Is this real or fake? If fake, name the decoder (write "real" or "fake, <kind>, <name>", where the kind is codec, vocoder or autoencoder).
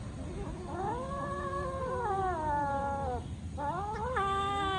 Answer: real